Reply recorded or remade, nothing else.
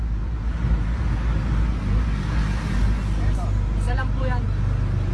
recorded